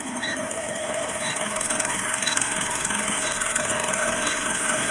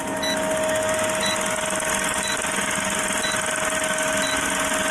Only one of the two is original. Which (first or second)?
second